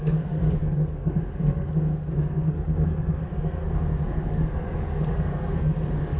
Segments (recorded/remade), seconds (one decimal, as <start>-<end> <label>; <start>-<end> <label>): 0.0-6.2 remade